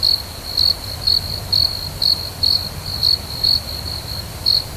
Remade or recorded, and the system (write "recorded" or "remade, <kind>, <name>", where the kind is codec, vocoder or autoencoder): recorded